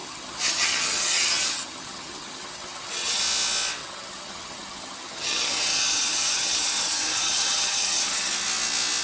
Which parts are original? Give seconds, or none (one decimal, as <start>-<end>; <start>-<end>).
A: 3.2-3.8; 8.3-9.0